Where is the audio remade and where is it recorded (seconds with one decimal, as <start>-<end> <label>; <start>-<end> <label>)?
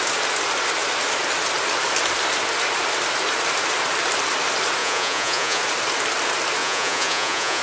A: 0.0-4.8 recorded; 4.8-5.6 remade; 5.6-6.6 recorded; 6.6-7.6 remade